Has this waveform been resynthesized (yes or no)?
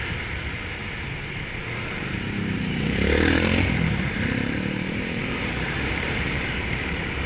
yes